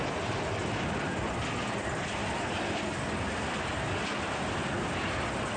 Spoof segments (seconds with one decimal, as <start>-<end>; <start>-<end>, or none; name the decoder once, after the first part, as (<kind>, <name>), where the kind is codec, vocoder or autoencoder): none